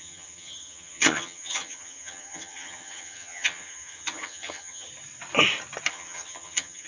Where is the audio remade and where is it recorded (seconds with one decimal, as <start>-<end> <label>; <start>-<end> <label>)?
0.0-4.9 remade; 4.9-5.9 recorded; 5.9-6.9 remade